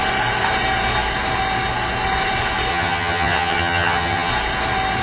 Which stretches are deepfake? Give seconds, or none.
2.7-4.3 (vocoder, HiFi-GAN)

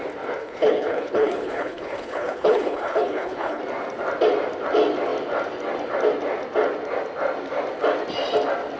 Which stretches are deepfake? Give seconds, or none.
0.4-3.6 (codec, HILCodec)

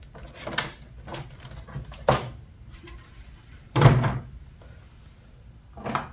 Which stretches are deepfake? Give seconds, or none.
1.1-4.8 (vocoder, BigVGAN v2)